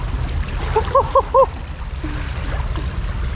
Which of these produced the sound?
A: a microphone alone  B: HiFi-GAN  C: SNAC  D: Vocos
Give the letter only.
A